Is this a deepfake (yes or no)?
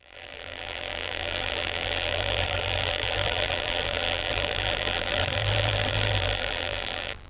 yes